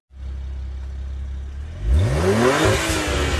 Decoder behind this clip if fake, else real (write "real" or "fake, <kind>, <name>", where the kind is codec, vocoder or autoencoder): real